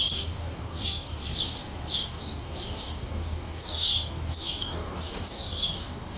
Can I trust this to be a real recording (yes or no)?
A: no